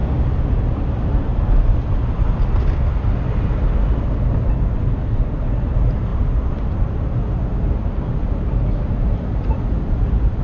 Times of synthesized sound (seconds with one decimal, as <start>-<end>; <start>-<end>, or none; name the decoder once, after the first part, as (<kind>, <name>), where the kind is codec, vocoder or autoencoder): 0.5-1.3 (vocoder, BigVGAN v2); 4.7-10.4